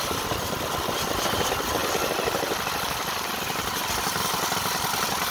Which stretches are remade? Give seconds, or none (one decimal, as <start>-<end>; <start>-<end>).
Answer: none

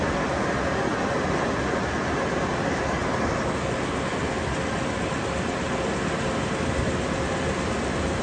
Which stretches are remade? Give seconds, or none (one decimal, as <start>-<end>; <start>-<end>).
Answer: none

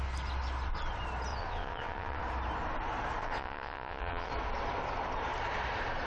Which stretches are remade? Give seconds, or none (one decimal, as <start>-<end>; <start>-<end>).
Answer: 1.3-2.2; 3.2-4.3

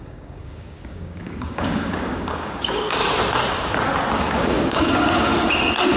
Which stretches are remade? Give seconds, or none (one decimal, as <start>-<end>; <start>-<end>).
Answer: 0.0-3.0; 4.2-5.3

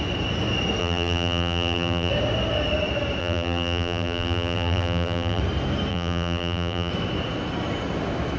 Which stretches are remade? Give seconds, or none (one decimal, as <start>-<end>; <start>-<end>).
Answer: 0.8-2.1; 3.2-5.4; 5.9-6.9

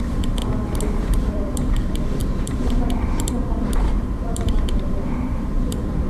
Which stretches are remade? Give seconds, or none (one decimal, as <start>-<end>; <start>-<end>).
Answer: 0.0-0.4; 1.0-6.1

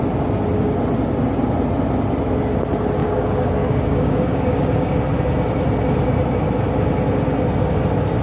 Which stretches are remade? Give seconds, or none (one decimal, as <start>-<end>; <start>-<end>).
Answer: 3.0-5.0